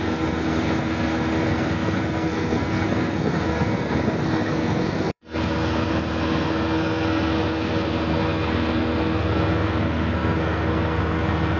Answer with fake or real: fake